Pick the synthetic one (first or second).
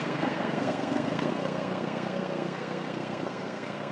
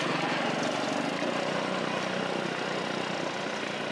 first